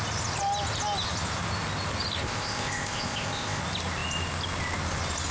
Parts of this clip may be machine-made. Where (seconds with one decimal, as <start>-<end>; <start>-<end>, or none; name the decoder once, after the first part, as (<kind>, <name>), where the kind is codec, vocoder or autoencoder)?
2.2-3.6 (codec, ZipCodec)